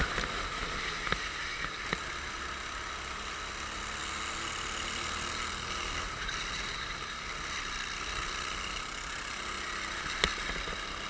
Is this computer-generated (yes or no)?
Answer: no